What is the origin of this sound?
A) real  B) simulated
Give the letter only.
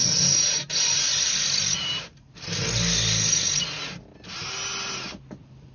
A